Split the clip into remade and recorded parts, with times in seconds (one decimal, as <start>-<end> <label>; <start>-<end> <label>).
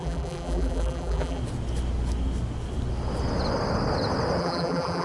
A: 0.0-1.4 remade; 1.4-4.4 recorded; 4.4-5.0 remade